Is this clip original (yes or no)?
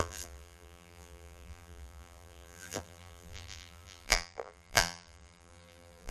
no